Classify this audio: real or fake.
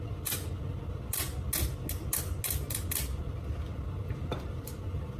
real